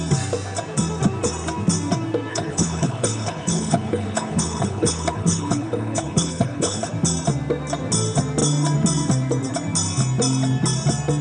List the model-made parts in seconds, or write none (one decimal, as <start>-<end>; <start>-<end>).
2.3-6.9